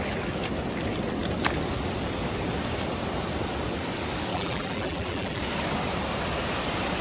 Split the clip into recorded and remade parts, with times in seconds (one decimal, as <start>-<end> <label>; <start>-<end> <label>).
0.0-4.3 recorded; 4.3-5.4 remade; 5.4-7.0 recorded